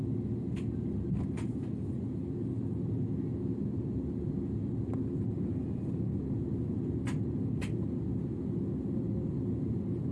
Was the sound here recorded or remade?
recorded